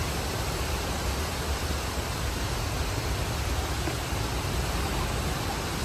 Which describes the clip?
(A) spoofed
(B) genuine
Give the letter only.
B